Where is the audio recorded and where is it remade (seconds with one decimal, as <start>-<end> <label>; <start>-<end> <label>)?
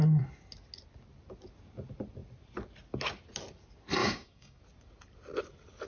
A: 0.0-4.0 recorded; 4.0-4.6 remade; 4.6-5.9 recorded